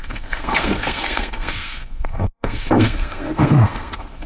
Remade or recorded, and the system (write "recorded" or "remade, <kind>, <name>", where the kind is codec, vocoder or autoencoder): remade, codec, SNAC